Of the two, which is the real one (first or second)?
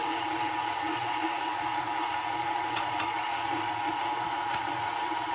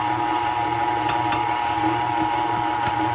second